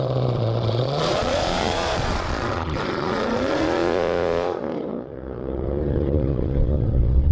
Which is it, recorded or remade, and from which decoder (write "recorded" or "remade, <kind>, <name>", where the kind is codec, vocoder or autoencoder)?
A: remade, vocoder, Vocos